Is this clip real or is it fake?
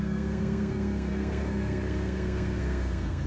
fake